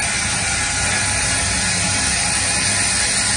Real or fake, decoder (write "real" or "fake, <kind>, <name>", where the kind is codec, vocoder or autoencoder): real